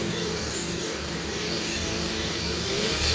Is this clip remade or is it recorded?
remade